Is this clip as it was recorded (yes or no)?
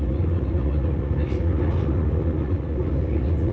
no